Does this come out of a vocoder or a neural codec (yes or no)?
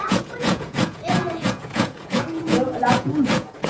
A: yes